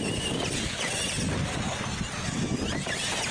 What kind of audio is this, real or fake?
real